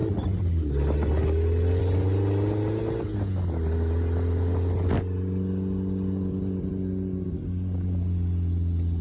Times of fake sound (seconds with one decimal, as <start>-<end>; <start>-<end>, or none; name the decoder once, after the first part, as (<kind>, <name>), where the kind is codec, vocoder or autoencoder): none